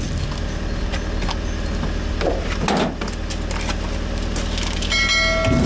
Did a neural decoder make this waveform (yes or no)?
no